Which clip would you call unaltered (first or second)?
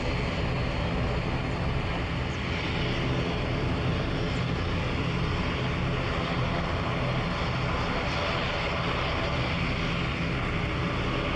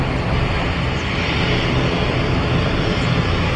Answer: first